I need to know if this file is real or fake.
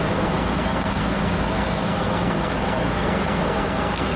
fake